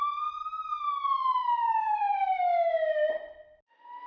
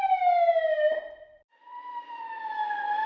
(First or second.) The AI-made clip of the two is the second